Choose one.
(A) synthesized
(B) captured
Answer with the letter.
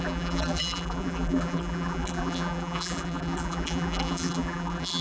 A